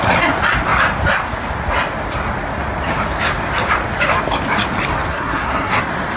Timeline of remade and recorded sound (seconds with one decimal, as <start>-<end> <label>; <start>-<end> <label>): 0.0-5.1 recorded; 5.1-5.8 remade; 5.8-6.2 recorded